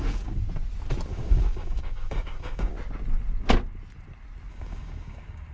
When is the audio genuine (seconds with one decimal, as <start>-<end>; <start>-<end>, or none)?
0.4-1.1; 2.7-4.5